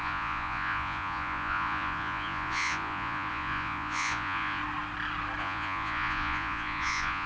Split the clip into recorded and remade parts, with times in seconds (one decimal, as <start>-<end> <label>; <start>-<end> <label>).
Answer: 0.0-4.6 remade; 4.6-5.4 recorded; 5.4-7.3 remade